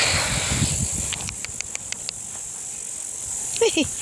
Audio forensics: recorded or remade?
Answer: recorded